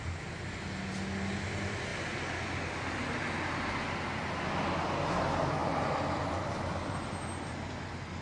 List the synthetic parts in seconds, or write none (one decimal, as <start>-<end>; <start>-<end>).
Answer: none